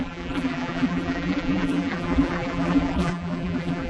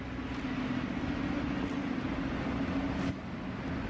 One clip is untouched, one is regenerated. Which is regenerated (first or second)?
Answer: first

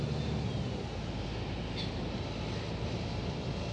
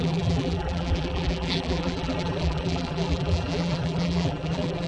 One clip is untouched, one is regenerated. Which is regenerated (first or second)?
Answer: second